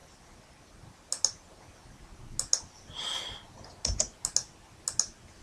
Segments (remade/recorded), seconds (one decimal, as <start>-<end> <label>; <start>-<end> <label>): 0.0-5.4 recorded